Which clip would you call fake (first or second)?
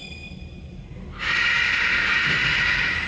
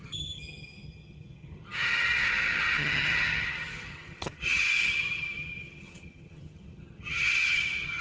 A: second